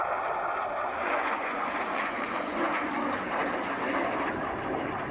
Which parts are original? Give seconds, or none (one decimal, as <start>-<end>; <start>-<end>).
0.0-1.0; 2.9-5.1